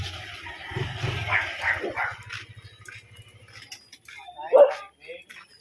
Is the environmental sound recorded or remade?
recorded